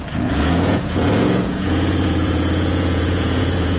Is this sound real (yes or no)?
no